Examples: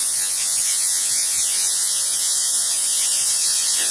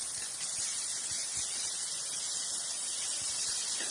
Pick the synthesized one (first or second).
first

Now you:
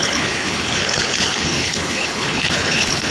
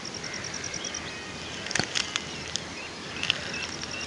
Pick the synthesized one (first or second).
first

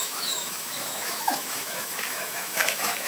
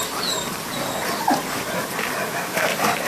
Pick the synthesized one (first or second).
first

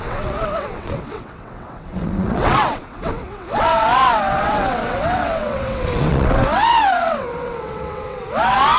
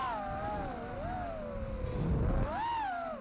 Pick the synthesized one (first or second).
first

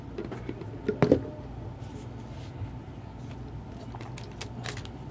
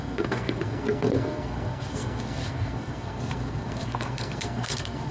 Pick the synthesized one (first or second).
second